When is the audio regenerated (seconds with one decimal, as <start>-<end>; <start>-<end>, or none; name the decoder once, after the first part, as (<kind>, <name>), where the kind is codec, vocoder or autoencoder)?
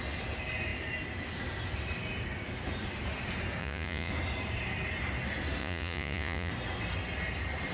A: 3.6-4.1 (vocoder, Vocos); 5.6-6.5